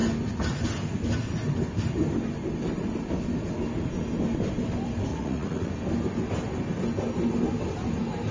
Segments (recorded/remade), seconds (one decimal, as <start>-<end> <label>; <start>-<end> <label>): 0.0-5.1 recorded; 5.1-5.7 remade; 5.7-8.3 recorded